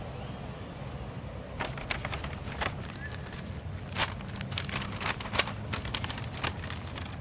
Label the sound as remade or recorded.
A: recorded